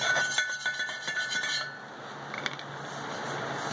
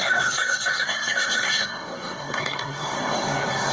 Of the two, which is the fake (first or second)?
second